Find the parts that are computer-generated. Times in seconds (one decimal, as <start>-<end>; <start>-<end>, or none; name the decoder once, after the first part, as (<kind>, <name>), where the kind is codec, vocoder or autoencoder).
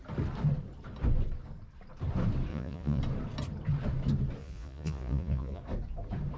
2.5-3.0 (vocoder, Vocos); 4.4-5.6